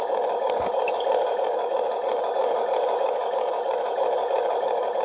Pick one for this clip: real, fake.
fake